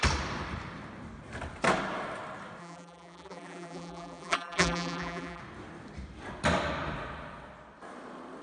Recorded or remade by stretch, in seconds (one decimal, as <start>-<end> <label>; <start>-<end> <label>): 0.0-2.6 recorded; 2.6-5.4 remade; 5.4-8.4 recorded